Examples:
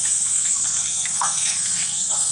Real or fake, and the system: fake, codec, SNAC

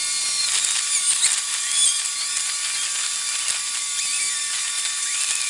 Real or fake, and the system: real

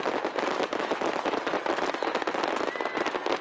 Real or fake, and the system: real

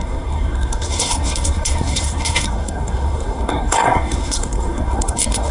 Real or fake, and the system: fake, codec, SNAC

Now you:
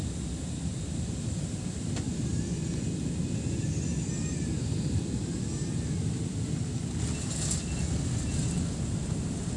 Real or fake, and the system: real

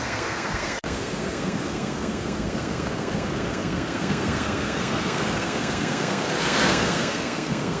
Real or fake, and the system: fake, codec, SNAC